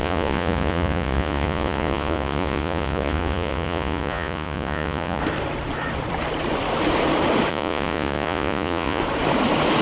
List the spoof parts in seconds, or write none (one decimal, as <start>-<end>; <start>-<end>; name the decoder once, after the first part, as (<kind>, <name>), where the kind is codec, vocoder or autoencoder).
0.0-5.2 (vocoder, Vocos); 7.5-9.0

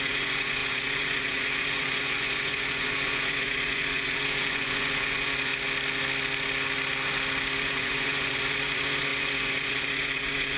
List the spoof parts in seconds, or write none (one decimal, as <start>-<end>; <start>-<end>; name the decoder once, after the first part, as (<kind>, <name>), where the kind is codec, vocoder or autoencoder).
0.0-5.5 (vocoder, Vocos); 7.6-10.6